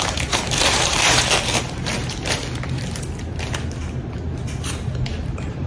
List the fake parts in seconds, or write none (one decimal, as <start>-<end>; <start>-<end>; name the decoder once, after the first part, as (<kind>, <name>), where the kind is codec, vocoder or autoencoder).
0.0-2.4 (vocoder, BigVGAN v2); 4.6-5.7